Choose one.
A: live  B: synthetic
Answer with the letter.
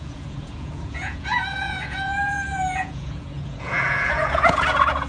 B